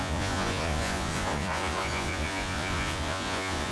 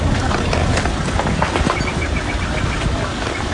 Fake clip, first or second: first